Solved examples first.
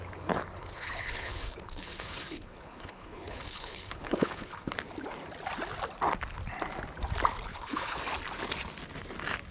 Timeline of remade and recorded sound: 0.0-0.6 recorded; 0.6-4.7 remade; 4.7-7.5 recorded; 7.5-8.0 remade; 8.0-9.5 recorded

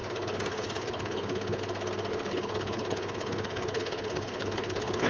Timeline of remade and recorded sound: 0.0-1.6 remade; 1.6-2.1 recorded; 2.1-5.1 remade